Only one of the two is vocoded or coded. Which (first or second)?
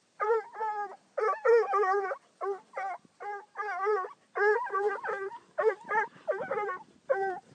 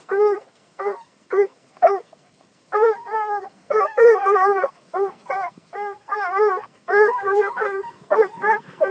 second